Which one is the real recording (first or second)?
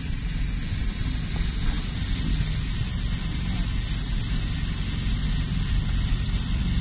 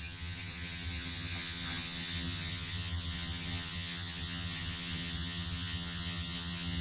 first